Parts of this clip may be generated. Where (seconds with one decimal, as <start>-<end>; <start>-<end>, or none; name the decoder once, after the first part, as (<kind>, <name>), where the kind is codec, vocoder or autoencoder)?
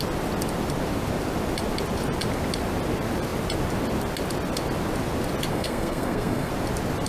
5.5-6.5 (codec, SNAC)